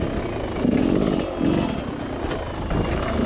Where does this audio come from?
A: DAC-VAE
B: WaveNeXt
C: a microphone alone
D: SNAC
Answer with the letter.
C